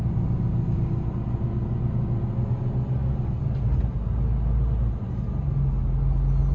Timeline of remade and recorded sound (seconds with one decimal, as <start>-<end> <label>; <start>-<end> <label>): 0.0-6.5 recorded